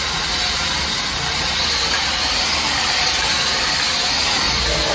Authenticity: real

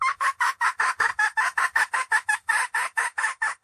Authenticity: fake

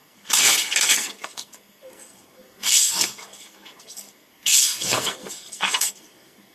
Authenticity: fake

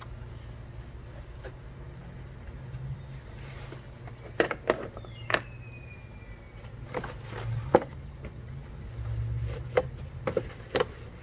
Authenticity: real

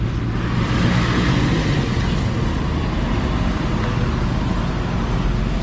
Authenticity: real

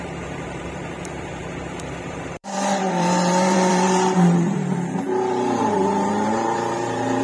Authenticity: fake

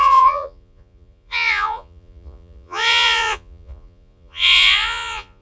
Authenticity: fake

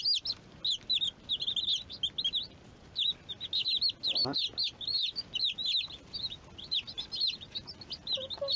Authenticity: real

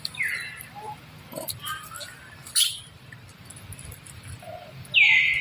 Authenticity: real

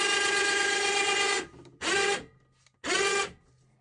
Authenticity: real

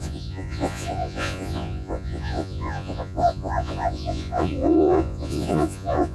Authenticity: fake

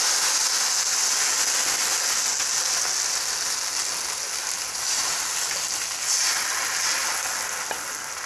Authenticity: real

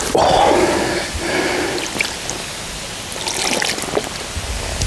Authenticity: real